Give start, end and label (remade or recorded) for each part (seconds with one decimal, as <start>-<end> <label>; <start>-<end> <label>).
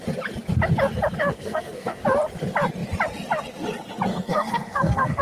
0.0-1.2 recorded; 1.2-2.0 remade; 2.0-4.1 recorded; 4.1-5.2 remade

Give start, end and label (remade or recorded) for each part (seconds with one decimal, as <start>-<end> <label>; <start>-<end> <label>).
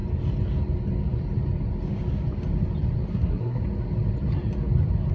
0.0-3.1 recorded; 3.1-3.6 remade; 3.6-5.1 recorded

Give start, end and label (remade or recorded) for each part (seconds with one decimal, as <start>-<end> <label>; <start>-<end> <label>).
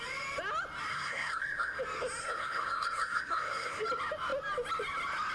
0.0-0.9 recorded; 0.9-1.8 remade; 1.8-2.2 recorded; 2.2-3.8 remade; 3.8-5.3 recorded